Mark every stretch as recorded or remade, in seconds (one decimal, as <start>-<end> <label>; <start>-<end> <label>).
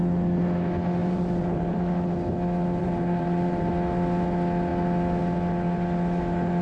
0.0-1.0 recorded; 1.0-1.7 remade; 1.7-2.8 recorded; 2.8-3.7 remade; 3.7-6.6 recorded